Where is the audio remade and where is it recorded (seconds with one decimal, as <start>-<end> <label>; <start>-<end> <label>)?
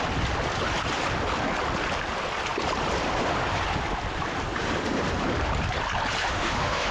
0.0-6.2 recorded; 6.2-6.9 remade